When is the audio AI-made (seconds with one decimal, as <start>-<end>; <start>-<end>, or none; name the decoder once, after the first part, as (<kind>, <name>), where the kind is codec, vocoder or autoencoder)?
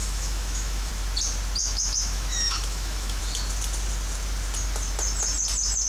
0.0-0.9 (autoencoder, DAC-VAE); 1.6-3.2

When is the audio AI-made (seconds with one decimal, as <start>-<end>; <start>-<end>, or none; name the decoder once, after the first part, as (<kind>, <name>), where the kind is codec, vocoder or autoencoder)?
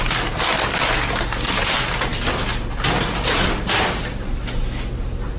none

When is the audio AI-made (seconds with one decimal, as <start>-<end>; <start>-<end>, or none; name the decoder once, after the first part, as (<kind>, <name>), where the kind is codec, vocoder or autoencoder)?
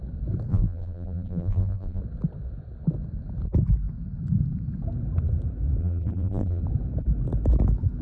0.5-2.0 (vocoder, BigVGAN v2); 5.8-6.6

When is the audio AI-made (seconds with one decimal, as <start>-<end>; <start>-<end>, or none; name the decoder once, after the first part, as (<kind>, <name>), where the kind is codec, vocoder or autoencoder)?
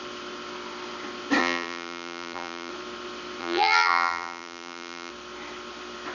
1.4-2.7 (vocoder, BigVGAN v2); 3.4-5.1